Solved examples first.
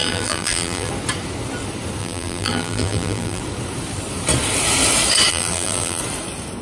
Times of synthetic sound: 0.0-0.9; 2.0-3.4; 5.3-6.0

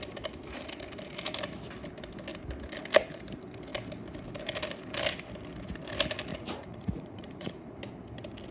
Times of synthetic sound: 6.3-7.7

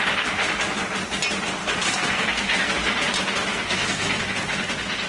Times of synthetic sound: 1.6-2.7; 3.5-4.2

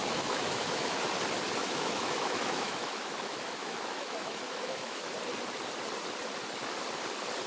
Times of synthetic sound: 0.0-1.0; 1.6-5.1

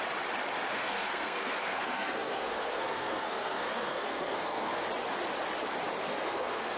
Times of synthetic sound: 0.7-4.8; 6.1-6.8

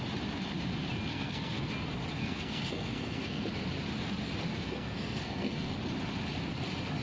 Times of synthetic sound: 1.1-1.7; 2.2-3.5; 4.5-5.8

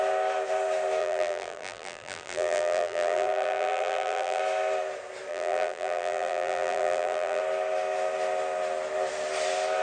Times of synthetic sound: 1.0-4.4; 5.3-7.4

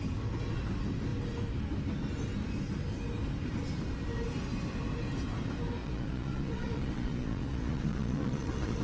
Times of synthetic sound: 5.8-8.8